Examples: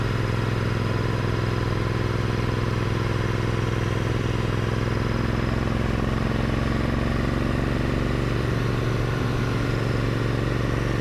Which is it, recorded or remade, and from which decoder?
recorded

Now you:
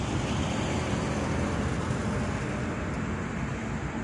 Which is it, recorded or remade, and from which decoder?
recorded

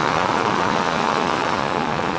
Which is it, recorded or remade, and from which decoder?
remade, vocoder, Vocos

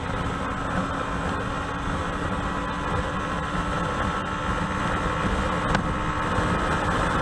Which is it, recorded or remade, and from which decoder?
recorded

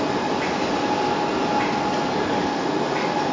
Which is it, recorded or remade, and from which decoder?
recorded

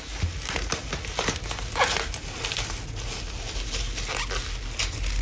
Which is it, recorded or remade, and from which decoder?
recorded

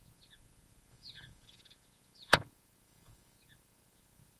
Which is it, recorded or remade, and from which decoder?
remade, vocoder, Vocos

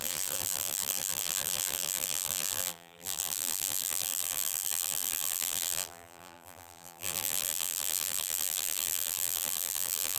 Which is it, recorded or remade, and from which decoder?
remade, vocoder, BigVGAN v2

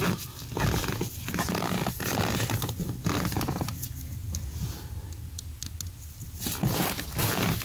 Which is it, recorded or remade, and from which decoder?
recorded